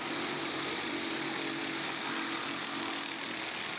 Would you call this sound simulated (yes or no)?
no